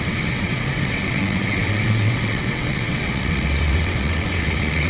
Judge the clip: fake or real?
fake